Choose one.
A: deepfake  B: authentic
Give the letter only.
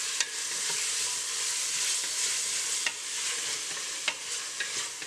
B